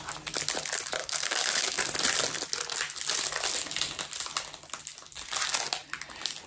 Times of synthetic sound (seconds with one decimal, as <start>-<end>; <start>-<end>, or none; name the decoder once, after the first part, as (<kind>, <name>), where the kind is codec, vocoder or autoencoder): 1.0-1.9 (codec, DAC)